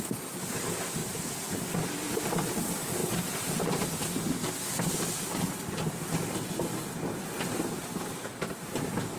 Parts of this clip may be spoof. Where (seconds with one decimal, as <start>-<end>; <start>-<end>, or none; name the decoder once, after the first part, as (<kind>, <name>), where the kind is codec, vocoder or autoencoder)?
1.0-1.6 (vocoder, BigVGAN v2); 3.0-6.5